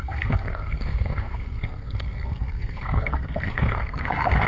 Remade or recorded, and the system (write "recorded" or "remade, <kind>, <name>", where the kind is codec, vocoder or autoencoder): remade, codec, SNAC